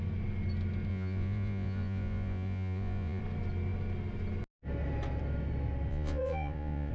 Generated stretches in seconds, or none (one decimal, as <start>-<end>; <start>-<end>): 0.9-3.2; 5.9-6.9